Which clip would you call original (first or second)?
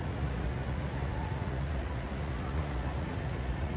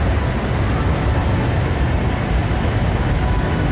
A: second